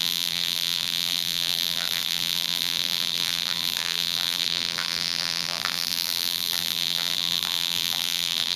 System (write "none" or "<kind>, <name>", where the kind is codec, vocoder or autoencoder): vocoder, BigVGAN v2